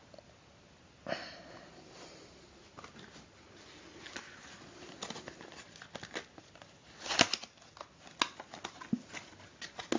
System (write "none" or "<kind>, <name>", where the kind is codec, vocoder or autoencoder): none